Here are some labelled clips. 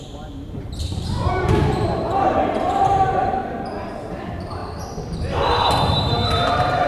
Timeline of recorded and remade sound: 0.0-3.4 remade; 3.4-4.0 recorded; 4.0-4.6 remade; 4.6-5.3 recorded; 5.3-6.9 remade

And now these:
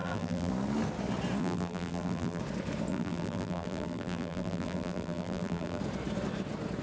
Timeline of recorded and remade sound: 0.0-0.5 remade; 0.5-1.4 recorded; 1.4-2.4 remade; 2.4-2.9 recorded; 2.9-5.8 remade; 5.8-6.8 recorded

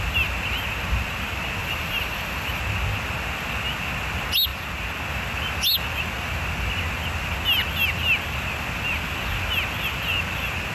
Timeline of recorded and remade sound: 0.0-1.6 recorded; 1.6-2.6 remade; 2.6-10.7 recorded

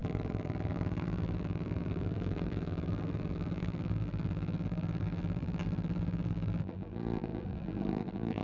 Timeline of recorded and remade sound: 0.0-8.4 remade

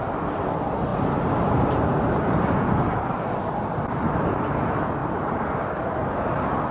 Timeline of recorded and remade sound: 0.0-0.9 recorded; 0.9-3.8 remade; 3.8-5.0 recorded; 5.0-5.6 remade; 5.6-6.7 recorded

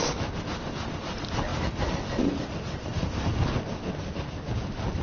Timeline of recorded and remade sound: 0.0-5.0 recorded

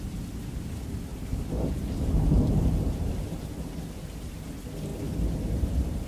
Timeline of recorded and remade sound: 0.0-1.1 recorded; 1.1-4.5 remade; 4.5-6.1 recorded